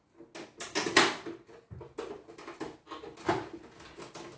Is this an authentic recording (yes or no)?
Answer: yes